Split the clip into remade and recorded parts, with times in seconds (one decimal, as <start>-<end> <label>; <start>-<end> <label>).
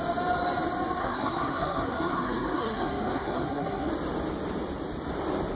0.0-1.0 recorded; 1.0-3.9 remade; 3.9-5.5 recorded